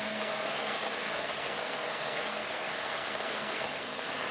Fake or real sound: fake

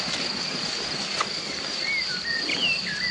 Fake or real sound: real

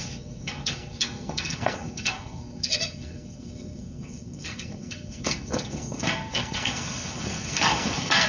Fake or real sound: fake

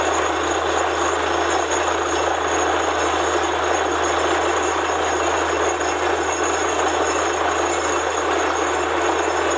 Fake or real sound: real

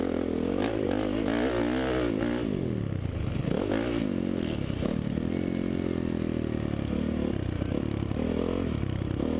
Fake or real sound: real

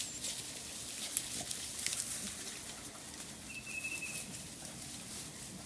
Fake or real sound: real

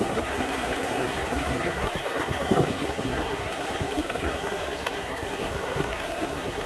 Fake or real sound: fake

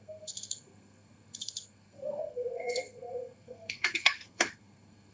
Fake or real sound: fake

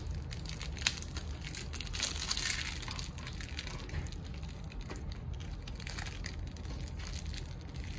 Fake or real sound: real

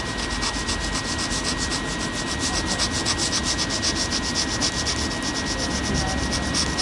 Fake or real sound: real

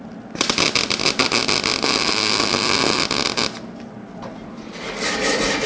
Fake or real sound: real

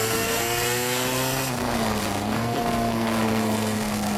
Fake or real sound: fake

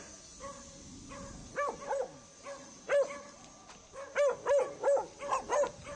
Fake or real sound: real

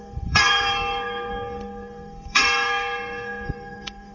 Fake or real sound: fake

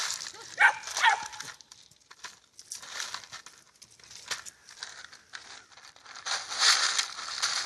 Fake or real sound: real